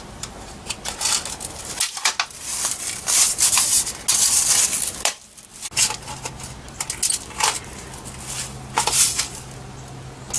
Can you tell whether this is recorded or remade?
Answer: recorded